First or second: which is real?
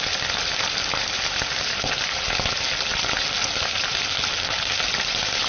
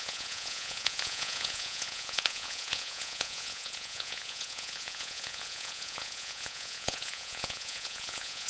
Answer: first